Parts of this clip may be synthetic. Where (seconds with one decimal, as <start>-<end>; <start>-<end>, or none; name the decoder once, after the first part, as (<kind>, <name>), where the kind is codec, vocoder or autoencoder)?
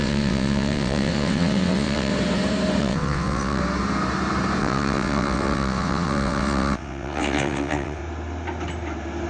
0.0-2.1 (vocoder, WaveNeXt); 2.8-3.6; 4.6-8.0